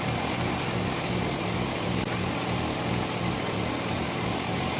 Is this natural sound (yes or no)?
yes